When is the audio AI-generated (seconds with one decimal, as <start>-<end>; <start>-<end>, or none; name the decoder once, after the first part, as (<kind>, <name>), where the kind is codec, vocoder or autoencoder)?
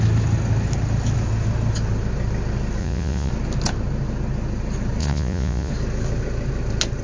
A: 2.8-3.3 (vocoder, Vocos); 5.0-5.7